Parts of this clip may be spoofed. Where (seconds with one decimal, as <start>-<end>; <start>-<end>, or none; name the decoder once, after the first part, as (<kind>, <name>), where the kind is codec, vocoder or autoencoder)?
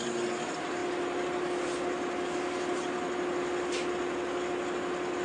none